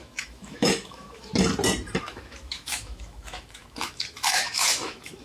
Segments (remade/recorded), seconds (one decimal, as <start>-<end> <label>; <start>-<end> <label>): 0.0-1.3 remade; 1.3-2.0 recorded; 2.0-5.2 remade